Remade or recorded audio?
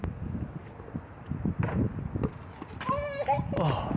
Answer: recorded